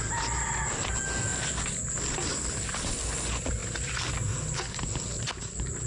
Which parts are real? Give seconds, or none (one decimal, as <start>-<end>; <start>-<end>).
0.0-5.9